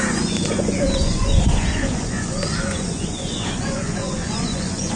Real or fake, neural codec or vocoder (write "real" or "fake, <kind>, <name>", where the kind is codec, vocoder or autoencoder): fake, vocoder, Vocos